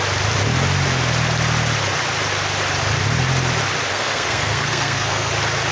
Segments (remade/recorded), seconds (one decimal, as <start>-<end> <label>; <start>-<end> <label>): 0.0-3.9 recorded; 3.9-5.3 remade; 5.3-5.7 recorded